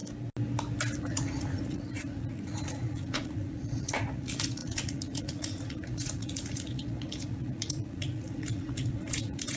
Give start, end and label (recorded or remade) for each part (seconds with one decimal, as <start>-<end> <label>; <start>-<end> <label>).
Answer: 0.0-1.0 recorded; 1.0-9.6 remade